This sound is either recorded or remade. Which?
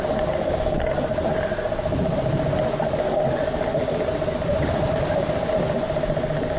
recorded